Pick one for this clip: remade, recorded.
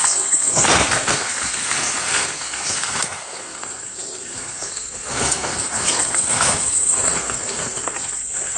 remade